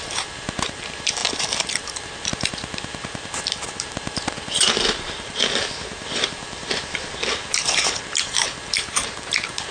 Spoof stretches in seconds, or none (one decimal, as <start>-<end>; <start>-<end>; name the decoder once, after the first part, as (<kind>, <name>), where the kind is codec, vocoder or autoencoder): 0.0-9.7 (vocoder, BigVGAN v2)